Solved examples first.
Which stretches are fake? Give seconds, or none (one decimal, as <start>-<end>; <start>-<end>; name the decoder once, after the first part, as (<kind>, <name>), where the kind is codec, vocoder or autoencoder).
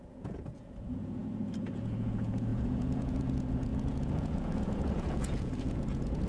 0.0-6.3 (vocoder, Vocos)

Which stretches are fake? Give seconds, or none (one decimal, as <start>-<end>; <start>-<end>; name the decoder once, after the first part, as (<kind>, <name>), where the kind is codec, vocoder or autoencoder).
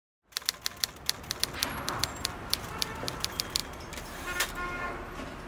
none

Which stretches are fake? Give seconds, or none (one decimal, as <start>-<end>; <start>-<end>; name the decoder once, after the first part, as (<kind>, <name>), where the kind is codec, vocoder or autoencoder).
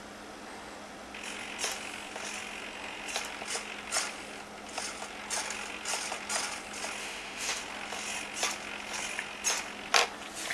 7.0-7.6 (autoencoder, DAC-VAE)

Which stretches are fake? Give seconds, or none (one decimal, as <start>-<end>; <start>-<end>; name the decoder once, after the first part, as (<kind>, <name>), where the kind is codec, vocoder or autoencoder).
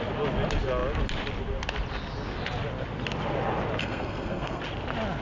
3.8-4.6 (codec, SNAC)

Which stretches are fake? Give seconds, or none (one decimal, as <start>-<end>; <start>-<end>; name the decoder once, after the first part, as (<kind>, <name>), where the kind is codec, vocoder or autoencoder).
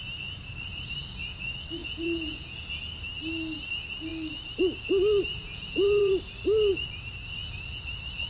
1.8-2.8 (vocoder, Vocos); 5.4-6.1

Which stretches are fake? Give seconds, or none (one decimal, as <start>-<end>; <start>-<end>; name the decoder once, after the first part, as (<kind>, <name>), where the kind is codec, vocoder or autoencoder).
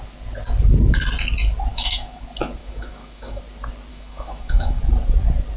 1.7-2.2 (autoencoder, DAC-VAE); 2.6-3.4; 3.9-4.8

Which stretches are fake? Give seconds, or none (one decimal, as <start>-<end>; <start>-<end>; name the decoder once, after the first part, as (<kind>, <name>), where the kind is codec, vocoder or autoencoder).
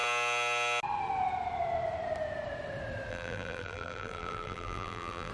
3.1-5.3 (vocoder, BigVGAN v2)